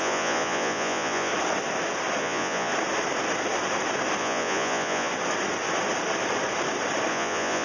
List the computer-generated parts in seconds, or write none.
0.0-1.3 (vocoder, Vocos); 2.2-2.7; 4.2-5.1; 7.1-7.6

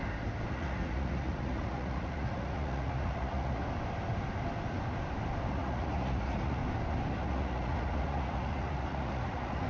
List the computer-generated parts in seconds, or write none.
0.5-3.6 (vocoder, Vocos); 5.5-6.6; 7.1-9.7

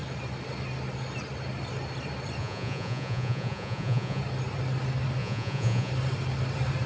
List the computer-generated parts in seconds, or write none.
2.4-4.2 (vocoder, Vocos); 5.2-5.9

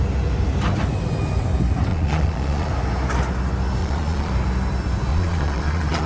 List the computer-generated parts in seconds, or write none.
1.9-2.7 (vocoder, Vocos); 3.8-4.3; 5.1-6.1